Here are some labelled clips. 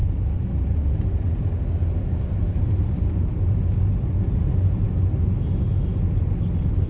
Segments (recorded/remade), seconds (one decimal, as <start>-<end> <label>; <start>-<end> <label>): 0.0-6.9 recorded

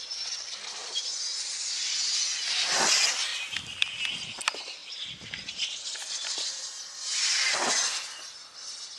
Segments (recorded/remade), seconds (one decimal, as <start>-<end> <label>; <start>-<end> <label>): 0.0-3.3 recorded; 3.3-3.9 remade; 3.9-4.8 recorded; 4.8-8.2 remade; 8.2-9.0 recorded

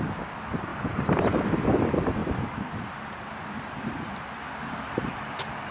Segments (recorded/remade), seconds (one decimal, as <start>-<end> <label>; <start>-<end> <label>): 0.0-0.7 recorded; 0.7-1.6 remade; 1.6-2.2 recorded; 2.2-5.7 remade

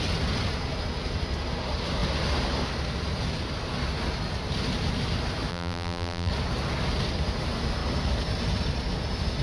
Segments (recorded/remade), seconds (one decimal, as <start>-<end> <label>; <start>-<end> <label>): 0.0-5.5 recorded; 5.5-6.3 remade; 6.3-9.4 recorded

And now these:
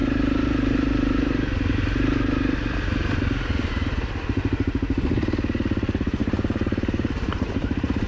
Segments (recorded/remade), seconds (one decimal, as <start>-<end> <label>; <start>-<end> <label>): 0.0-3.7 remade; 3.7-6.2 recorded; 6.2-8.1 remade

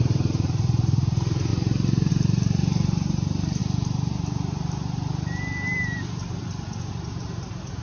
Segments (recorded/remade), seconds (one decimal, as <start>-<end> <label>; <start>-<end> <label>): 0.0-1.5 remade; 1.5-2.1 recorded; 2.1-3.6 remade; 3.6-6.9 recorded; 6.9-7.8 remade

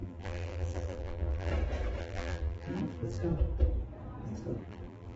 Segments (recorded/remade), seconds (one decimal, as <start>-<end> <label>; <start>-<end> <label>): 0.0-1.5 remade; 1.5-2.0 recorded; 2.0-3.3 remade; 3.3-4.6 recorded; 4.6-5.2 remade

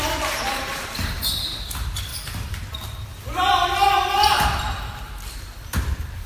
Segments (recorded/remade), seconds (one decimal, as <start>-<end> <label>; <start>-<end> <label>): 0.0-0.7 recorded; 0.7-1.2 remade; 1.2-2.1 recorded; 2.1-6.3 remade